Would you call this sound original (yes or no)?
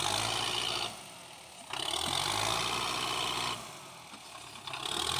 yes